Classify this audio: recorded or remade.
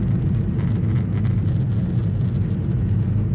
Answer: recorded